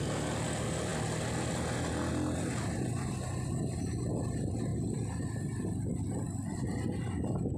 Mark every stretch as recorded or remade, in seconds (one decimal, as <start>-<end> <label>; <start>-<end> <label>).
0.0-7.6 recorded